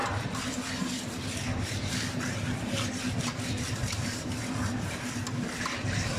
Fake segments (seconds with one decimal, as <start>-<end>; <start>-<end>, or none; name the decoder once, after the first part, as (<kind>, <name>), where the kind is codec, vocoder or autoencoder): 3.2-6.2 (vocoder, BigVGAN v2)